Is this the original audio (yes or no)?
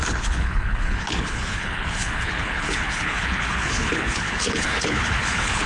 no